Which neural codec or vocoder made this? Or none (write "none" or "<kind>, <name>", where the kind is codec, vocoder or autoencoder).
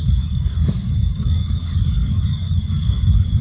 codec, DAC